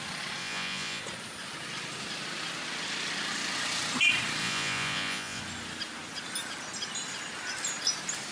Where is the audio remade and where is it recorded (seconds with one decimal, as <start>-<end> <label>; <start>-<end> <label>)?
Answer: 0.0-0.4 recorded; 0.4-1.0 remade; 1.0-4.4 recorded; 4.4-5.4 remade; 5.4-8.3 recorded